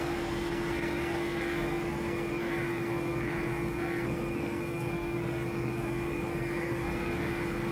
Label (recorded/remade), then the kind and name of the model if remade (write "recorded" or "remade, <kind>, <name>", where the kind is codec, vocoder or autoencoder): remade, codec, SNAC